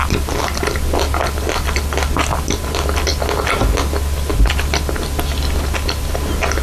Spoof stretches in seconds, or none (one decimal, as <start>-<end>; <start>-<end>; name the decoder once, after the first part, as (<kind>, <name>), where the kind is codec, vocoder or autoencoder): none